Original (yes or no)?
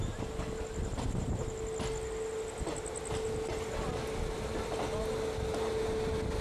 yes